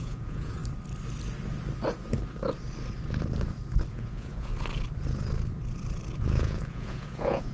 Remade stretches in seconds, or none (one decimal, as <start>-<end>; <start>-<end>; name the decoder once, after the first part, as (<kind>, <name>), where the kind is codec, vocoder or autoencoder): 0.0-0.6 (vocoder, Vocos); 3.9-4.5; 6.2-7.5